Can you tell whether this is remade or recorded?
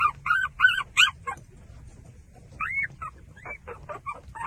recorded